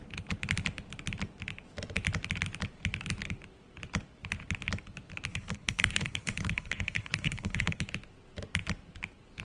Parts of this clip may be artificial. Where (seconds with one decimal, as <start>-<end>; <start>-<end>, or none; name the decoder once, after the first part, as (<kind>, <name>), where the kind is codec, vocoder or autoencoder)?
5.3-7.8 (codec, HILCodec)